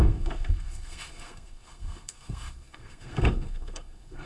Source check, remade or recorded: remade